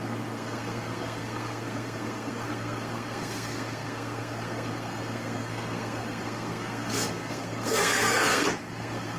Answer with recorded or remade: remade